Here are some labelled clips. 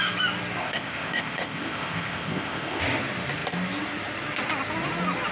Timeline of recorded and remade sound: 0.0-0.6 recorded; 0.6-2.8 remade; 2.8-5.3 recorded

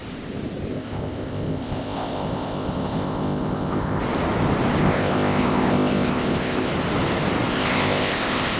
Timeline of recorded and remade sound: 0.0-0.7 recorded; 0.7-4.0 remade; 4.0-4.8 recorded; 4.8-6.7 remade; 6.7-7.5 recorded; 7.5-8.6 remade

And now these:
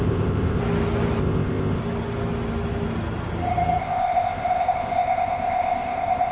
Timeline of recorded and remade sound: 0.0-0.6 remade; 0.6-1.2 recorded; 1.2-1.8 remade; 1.8-3.8 recorded; 3.8-6.3 remade

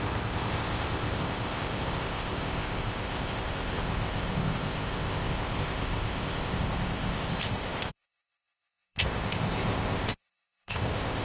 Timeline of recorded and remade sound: 0.0-11.2 remade